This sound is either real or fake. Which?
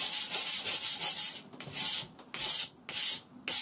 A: real